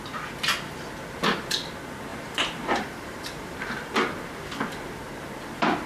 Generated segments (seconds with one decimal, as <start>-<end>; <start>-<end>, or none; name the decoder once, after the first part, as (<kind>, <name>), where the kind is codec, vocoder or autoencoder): 2.1-3.7 (vocoder, BigVGAN v2)

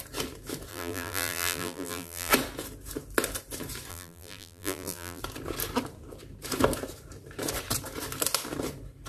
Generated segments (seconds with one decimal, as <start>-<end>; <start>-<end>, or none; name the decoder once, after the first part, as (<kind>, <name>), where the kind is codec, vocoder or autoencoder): 0.7-2.3 (vocoder, BigVGAN v2); 3.9-5.2

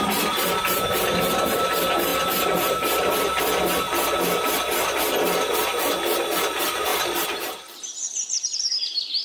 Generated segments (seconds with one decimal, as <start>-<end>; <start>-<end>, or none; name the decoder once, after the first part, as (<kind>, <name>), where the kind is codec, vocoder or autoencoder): 6.9-8.7 (vocoder, BigVGAN v2)

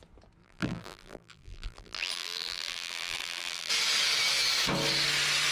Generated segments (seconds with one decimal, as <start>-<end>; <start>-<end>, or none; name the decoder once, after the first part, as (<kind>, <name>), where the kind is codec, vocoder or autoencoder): 0.4-3.7 (vocoder, BigVGAN v2)

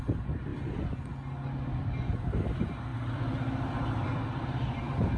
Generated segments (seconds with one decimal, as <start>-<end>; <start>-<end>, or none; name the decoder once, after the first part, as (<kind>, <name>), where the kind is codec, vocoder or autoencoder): 0.0-0.5 (vocoder, BigVGAN v2); 2.3-5.2

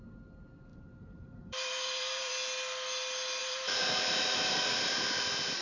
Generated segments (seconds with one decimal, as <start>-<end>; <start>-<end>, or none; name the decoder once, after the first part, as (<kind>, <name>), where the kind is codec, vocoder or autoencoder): 0.7-2.3 (vocoder, BigVGAN v2); 3.4-4.6

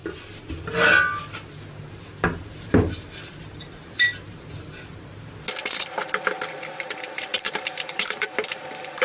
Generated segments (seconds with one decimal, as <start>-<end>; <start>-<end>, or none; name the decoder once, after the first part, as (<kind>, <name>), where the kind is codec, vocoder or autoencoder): 7.3-9.0 (vocoder, BigVGAN v2)

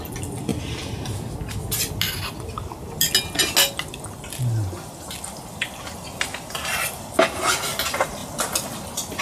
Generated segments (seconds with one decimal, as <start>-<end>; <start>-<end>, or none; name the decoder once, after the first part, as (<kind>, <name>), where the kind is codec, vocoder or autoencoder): 6.3-7.0 (vocoder, BigVGAN v2)